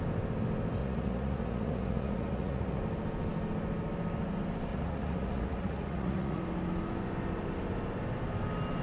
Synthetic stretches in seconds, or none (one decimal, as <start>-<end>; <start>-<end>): 0.8-2.8; 4.7-6.4